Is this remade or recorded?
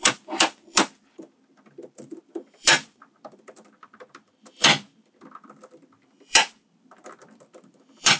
remade